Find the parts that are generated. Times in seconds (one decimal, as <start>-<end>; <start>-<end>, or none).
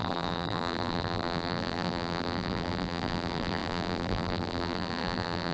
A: 0.0-5.5